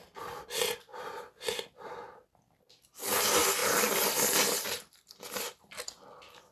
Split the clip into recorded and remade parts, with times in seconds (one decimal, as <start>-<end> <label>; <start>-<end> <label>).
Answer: 0.0-0.9 remade; 0.9-1.6 recorded; 1.6-3.6 remade; 3.6-5.4 recorded; 5.4-6.5 remade